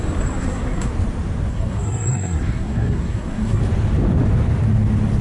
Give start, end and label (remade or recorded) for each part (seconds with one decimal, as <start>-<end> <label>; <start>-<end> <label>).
0.0-0.4 recorded; 0.4-0.9 remade; 0.9-1.5 recorded; 1.5-3.6 remade; 3.6-5.2 recorded